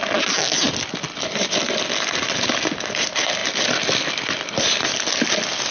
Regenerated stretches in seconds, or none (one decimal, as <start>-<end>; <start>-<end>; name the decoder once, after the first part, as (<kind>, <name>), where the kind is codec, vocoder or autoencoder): none